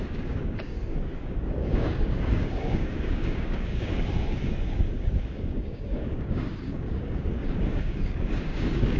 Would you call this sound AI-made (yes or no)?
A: yes